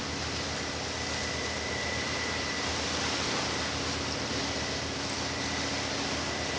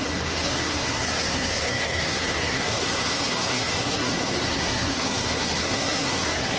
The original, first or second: first